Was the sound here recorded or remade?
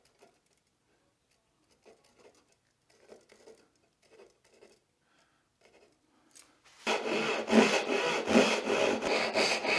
recorded